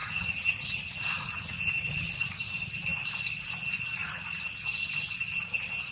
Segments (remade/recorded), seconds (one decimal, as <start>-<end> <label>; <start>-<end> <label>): 0.0-1.7 remade; 1.7-4.0 recorded; 4.0-4.7 remade; 4.7-5.9 recorded